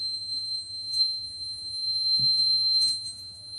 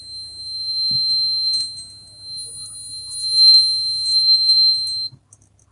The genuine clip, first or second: second